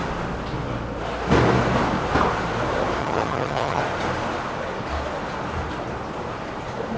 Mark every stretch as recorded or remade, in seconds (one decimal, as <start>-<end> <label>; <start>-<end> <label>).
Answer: 0.0-3.0 recorded; 3.0-3.8 remade; 3.8-7.0 recorded